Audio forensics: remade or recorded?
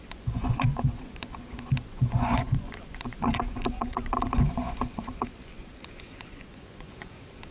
remade